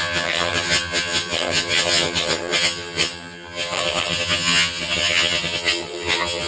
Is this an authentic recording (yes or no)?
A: no